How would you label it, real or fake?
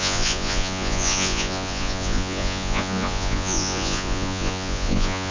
fake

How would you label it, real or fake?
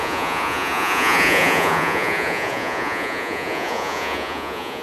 fake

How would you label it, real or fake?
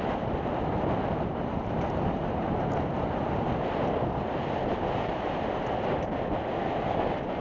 real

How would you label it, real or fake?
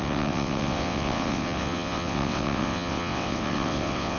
fake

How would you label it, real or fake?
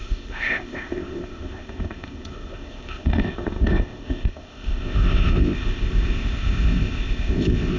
fake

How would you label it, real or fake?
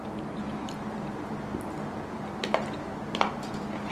real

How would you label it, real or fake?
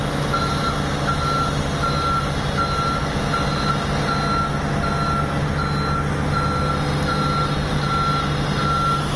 real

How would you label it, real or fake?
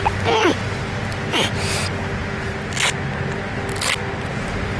real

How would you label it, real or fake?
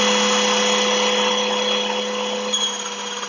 real